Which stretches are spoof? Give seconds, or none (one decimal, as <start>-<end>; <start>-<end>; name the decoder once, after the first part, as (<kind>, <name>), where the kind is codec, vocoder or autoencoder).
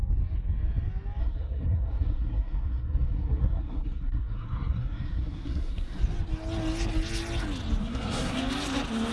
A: 1.2-6.0 (codec, SNAC); 7.8-8.4